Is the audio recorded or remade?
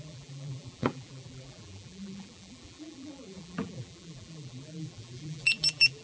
remade